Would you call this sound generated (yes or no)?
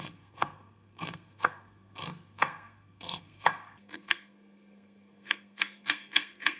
yes